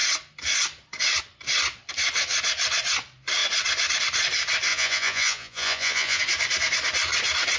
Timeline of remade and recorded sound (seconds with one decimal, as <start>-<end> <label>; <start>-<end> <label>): 0.0-4.7 recorded; 4.7-6.2 remade; 6.2-7.6 recorded